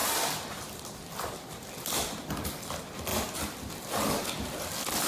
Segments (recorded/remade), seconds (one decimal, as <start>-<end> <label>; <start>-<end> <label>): 0.0-5.1 recorded